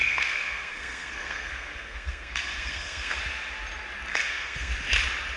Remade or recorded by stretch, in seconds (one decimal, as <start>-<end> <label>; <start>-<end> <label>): 0.0-3.2 remade; 3.2-4.1 recorded; 4.1-4.7 remade; 4.7-5.4 recorded